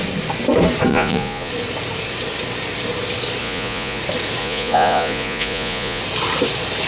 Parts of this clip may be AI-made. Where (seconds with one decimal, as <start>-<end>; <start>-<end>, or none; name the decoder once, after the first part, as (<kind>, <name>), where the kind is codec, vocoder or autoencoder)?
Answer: 0.9-1.5 (vocoder, Vocos); 3.4-4.0; 4.4-6.0